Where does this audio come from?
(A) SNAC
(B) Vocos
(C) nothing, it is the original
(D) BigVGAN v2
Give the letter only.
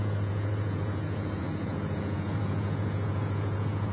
B